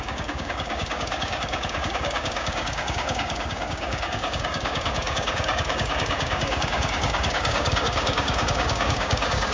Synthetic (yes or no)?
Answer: yes